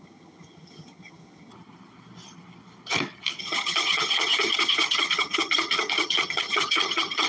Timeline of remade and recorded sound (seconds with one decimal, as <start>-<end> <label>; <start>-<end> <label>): 0.0-1.5 remade; 1.5-3.4 recorded; 3.4-7.3 remade